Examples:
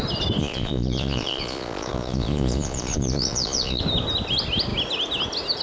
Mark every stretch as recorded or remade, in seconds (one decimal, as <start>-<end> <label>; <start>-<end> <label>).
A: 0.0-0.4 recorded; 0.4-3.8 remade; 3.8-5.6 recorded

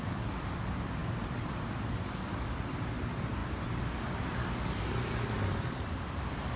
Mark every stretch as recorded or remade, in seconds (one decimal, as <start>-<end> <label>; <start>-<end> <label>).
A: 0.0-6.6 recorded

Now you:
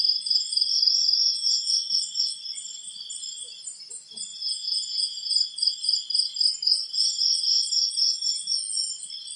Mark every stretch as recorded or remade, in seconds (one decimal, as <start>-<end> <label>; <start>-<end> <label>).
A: 0.0-1.2 recorded; 1.2-1.7 remade; 1.7-4.3 recorded; 4.3-5.3 remade; 5.3-9.4 recorded

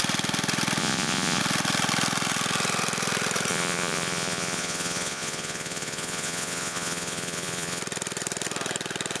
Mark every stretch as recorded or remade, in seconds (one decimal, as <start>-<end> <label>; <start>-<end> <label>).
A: 0.0-0.8 recorded; 0.8-1.4 remade; 1.4-3.5 recorded; 3.5-7.8 remade; 7.8-9.2 recorded